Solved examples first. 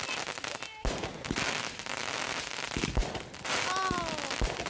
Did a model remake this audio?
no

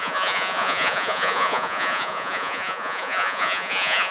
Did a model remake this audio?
yes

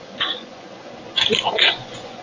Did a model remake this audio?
yes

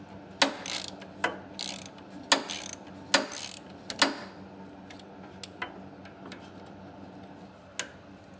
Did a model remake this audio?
no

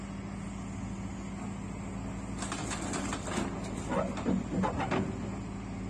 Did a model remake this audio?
no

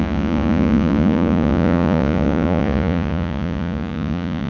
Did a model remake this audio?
yes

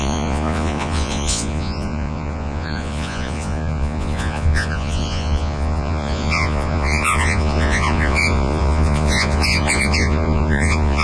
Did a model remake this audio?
yes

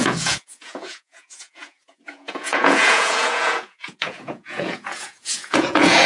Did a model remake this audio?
yes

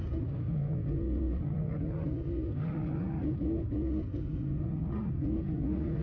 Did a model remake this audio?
no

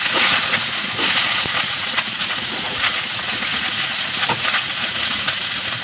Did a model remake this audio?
yes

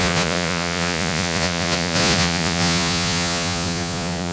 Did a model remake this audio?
yes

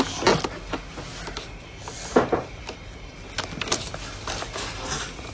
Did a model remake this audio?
no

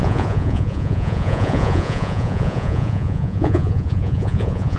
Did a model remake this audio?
yes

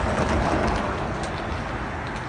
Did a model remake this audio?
no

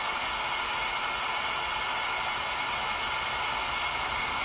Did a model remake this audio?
no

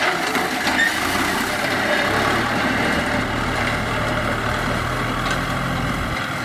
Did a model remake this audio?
no